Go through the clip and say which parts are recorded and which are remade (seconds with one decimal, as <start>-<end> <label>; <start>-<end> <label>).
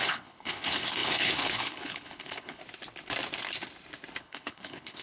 0.0-2.6 remade; 2.6-4.2 recorded; 4.2-5.0 remade